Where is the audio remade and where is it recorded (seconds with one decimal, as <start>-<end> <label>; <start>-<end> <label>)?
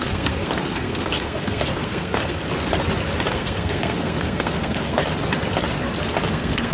0.0-2.5 remade; 2.5-3.3 recorded; 3.3-5.0 remade; 5.0-6.3 recorded; 6.3-6.7 remade